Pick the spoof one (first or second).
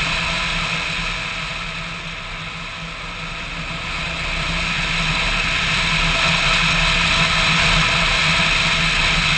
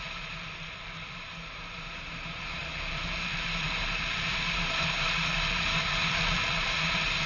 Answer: second